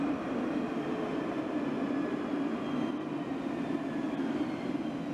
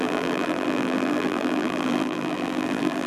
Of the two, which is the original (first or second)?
first